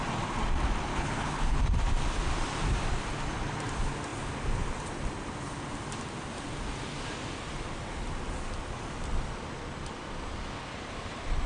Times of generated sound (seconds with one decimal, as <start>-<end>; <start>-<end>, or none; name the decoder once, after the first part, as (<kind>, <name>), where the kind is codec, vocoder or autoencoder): 0.9-1.6 (codec, HILCodec)